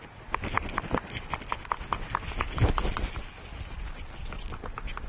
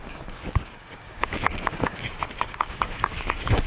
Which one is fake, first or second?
second